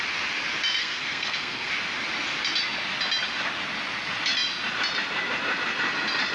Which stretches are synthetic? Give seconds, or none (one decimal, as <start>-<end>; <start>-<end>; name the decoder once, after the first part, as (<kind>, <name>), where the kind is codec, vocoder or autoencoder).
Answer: 0.8-1.7 (codec, SNAC)